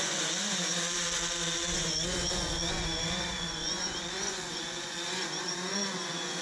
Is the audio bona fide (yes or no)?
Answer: no